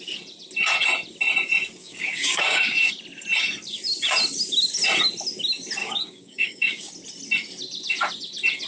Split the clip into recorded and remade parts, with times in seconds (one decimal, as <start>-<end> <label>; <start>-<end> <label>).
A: 0.0-1.8 recorded; 1.8-2.9 remade; 2.9-5.8 recorded; 5.8-6.9 remade; 6.9-8.7 recorded